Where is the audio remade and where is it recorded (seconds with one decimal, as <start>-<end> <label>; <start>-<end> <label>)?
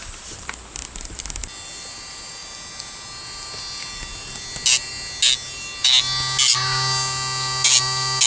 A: 0.0-0.5 remade; 0.5-8.3 recorded